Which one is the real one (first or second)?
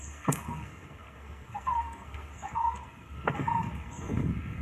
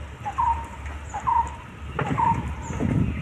second